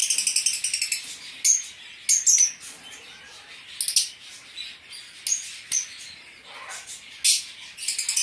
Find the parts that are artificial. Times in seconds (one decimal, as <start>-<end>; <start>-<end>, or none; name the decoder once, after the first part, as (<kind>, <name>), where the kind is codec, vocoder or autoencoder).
none